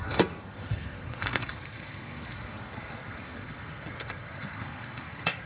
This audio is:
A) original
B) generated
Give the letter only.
B